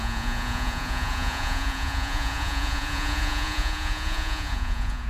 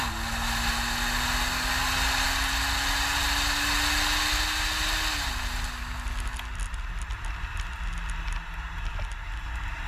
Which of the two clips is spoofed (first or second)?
first